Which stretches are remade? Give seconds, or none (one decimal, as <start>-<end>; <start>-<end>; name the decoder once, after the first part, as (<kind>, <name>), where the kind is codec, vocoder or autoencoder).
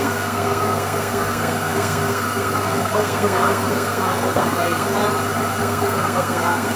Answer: 0.0-5.0 (codec, SNAC); 5.6-6.8